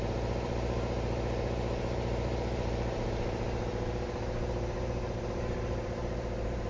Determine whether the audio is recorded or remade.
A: remade